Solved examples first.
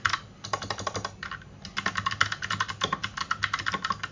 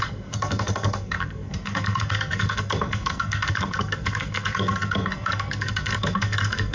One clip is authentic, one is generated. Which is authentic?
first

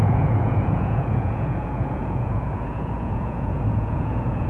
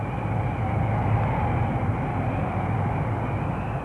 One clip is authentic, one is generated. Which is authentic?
second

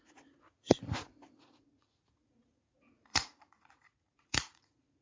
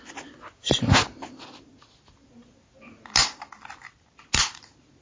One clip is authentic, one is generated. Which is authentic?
second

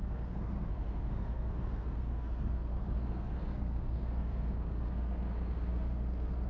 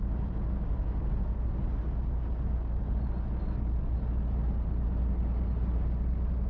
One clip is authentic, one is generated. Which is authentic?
second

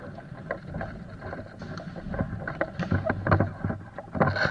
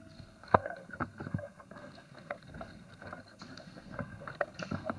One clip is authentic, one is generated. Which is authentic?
first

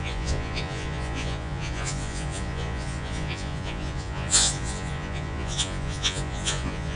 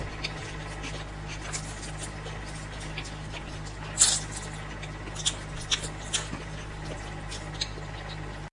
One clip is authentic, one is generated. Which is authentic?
second